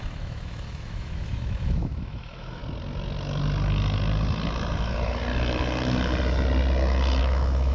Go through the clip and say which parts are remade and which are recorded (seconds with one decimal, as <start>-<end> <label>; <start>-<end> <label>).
0.0-2.6 remade; 2.6-7.2 recorded; 7.2-7.7 remade